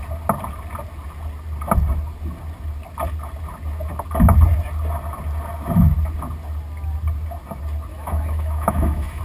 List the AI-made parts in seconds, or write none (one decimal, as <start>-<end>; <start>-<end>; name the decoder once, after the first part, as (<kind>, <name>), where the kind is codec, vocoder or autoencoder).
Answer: 7.9-9.2 (autoencoder, DAC-VAE)